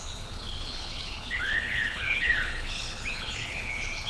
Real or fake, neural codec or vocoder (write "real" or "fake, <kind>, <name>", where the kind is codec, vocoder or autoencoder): fake, codec, HILCodec